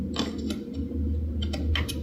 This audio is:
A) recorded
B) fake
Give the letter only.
A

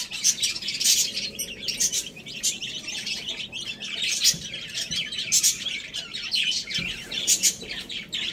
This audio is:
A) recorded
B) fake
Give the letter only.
B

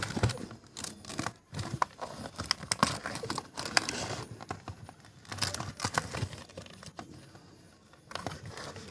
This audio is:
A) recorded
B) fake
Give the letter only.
A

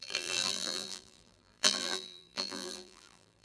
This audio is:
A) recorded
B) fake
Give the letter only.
B